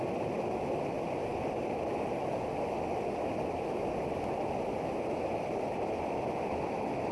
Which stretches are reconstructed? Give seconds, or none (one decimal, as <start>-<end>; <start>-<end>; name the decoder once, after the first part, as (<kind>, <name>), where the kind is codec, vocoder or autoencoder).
none